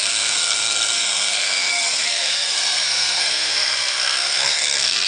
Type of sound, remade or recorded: remade